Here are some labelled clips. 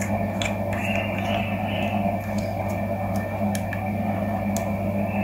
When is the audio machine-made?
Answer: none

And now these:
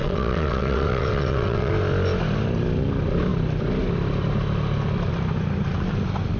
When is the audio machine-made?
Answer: 0.0-1.7 (vocoder, WaveNeXt)

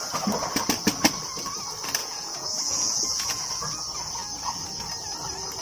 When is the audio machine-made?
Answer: 2.0-3.5 (vocoder, Vocos)

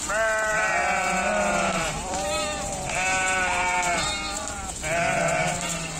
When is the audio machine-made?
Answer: 0.5-4.1 (vocoder, BigVGAN v2)

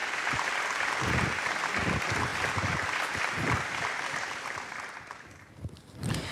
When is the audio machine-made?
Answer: none

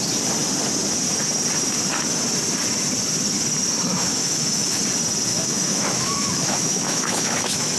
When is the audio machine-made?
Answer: 4.0-4.8 (autoencoder, DAC-VAE); 5.3-7.8